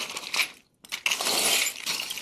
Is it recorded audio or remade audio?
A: recorded